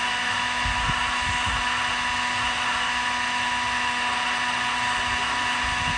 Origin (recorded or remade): recorded